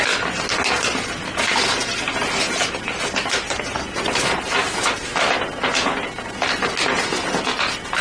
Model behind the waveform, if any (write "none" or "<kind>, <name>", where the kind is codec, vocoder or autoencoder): none